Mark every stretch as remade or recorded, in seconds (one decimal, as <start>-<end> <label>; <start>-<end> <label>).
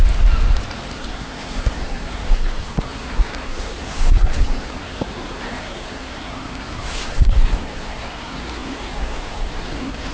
0.0-0.9 recorded; 0.9-10.1 remade